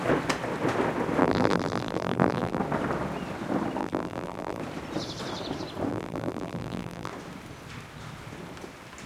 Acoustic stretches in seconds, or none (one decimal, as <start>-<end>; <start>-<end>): 0.0-1.2; 2.6-3.8; 4.6-5.9; 7.1-9.1